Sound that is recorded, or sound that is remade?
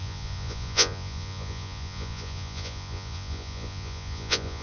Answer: remade